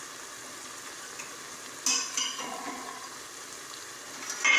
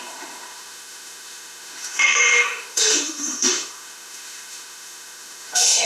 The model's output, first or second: second